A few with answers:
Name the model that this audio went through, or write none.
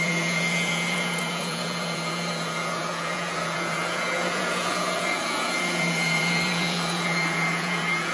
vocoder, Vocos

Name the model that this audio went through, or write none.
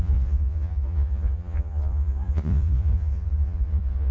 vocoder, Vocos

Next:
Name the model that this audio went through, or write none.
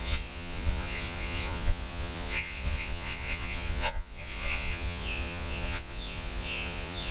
vocoder, Vocos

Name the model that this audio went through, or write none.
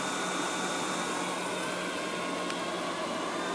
none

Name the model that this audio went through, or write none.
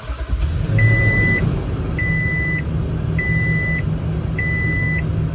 none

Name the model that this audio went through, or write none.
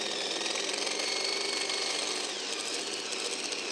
none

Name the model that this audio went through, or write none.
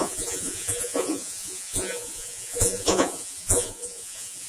vocoder, Vocos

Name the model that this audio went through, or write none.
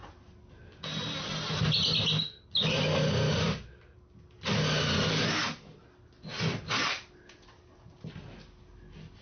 none